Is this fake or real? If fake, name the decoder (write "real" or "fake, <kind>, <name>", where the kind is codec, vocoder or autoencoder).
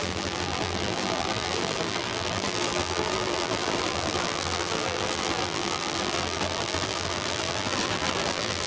fake, vocoder, BigVGAN v2